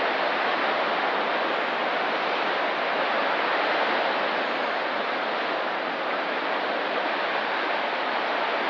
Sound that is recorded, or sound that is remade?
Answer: recorded